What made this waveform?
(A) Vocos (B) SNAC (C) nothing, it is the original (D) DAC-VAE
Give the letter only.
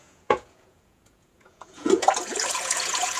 A